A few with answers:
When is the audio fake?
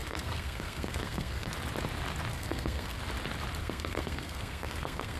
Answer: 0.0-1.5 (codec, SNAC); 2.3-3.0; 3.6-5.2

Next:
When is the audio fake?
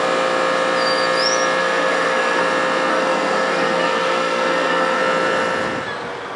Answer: 1.6-2.4 (codec, SNAC); 2.9-5.0